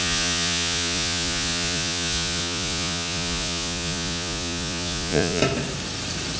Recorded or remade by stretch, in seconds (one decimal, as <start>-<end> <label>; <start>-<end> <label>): 0.0-5.4 remade; 5.4-6.4 recorded